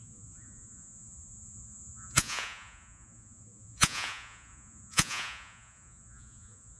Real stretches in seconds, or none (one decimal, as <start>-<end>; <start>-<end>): none